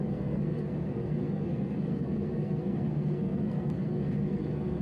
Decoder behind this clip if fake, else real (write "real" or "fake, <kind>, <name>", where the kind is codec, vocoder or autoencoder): fake, codec, SNAC